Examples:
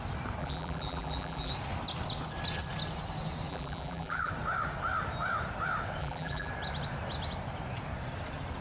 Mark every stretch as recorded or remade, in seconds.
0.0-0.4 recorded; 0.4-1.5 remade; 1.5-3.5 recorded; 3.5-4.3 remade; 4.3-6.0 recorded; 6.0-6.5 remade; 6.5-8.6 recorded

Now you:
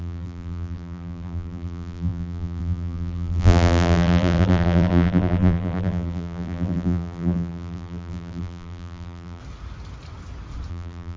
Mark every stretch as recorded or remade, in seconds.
0.0-9.4 remade; 9.4-10.7 recorded; 10.7-11.2 remade